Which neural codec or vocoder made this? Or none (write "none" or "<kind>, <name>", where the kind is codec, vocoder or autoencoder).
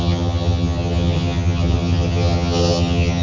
vocoder, HiFi-GAN